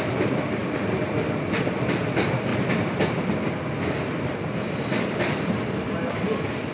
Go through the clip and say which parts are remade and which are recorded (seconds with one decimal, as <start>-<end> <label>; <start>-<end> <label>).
0.0-2.5 remade; 2.5-4.3 recorded; 4.3-6.7 remade